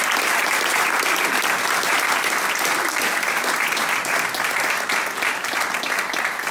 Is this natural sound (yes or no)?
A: yes